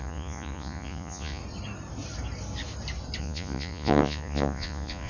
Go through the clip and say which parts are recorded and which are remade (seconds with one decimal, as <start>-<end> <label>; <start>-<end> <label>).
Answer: 0.0-1.4 remade; 1.4-3.2 recorded; 3.2-5.1 remade